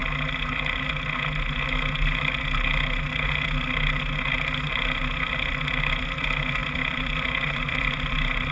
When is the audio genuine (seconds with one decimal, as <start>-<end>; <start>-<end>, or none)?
0.0-6.6